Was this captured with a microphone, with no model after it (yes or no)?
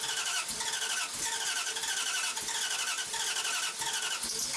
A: yes